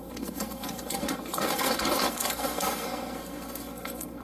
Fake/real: fake